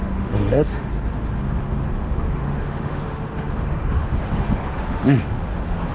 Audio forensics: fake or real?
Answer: fake